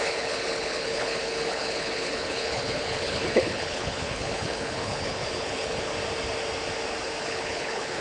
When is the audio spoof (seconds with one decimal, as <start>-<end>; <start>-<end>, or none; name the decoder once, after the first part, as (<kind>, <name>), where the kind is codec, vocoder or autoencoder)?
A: 0.0-5.9 (codec, HILCodec); 7.2-8.0